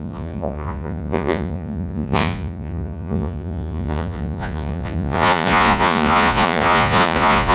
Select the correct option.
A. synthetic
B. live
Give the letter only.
A